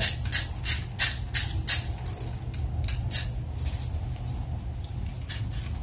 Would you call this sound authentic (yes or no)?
yes